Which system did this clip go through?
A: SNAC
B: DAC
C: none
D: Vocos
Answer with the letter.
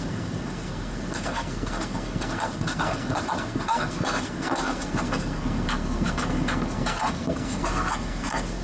A